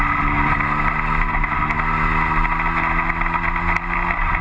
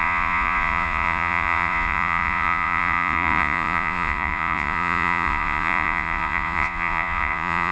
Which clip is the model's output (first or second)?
second